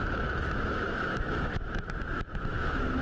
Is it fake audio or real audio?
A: fake